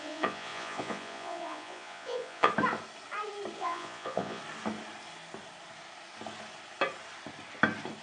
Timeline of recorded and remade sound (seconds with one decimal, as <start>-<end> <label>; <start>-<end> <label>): 0.0-2.5 remade; 2.5-3.6 recorded; 3.6-4.4 remade; 4.4-8.0 recorded